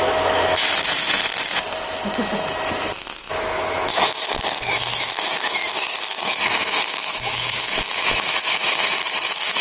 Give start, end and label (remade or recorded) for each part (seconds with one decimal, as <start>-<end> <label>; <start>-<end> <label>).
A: 0.0-0.6 remade; 0.6-3.0 recorded; 3.0-9.6 remade